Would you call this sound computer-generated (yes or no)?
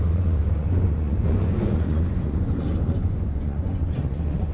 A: yes